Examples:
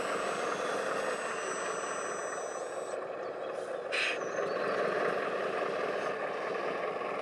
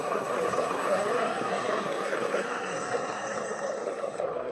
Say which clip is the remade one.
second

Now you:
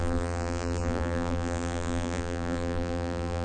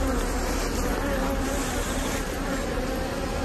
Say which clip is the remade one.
first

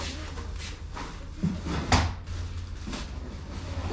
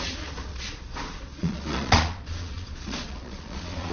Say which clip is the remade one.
second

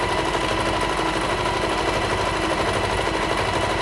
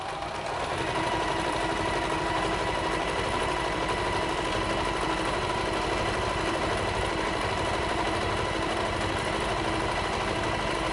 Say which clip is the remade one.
second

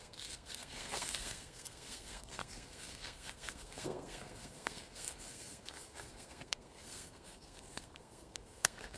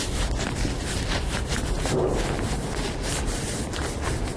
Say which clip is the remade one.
first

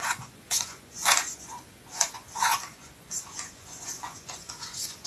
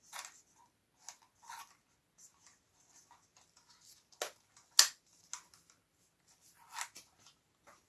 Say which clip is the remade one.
first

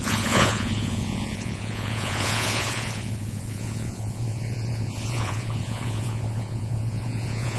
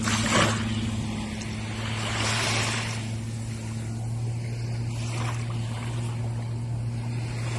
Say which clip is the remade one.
first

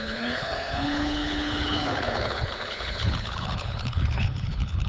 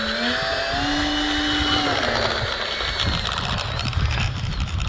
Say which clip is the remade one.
first